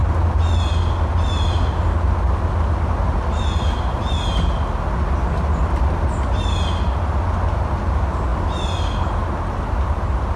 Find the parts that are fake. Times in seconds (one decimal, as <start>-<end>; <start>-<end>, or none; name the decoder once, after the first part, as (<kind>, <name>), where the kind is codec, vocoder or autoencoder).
none